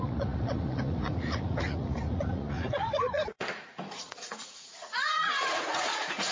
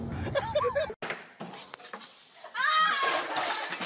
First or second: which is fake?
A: first